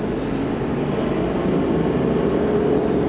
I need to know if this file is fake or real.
real